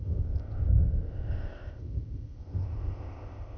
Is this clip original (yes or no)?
no